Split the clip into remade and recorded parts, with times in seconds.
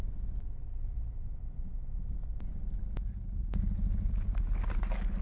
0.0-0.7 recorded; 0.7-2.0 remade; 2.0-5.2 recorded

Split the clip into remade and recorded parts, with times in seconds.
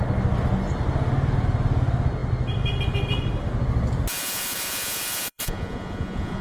0.0-4.1 recorded; 4.1-6.4 remade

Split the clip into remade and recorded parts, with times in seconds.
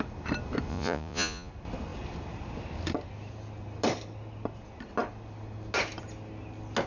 0.0-0.7 recorded; 0.7-1.5 remade; 1.5-6.9 recorded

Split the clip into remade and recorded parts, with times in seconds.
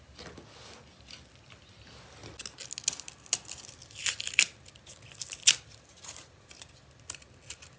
0.0-5.9 recorded; 5.9-6.4 remade; 6.4-7.8 recorded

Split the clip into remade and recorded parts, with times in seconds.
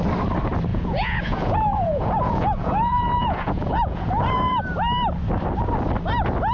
0.0-0.7 recorded; 0.7-4.6 remade; 4.6-6.5 recorded